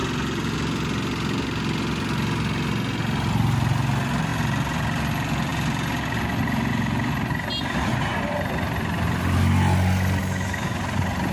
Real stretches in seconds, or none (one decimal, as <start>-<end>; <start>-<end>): 0.0-10.2; 10.8-11.3